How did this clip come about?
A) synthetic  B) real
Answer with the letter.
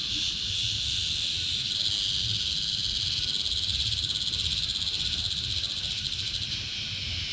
B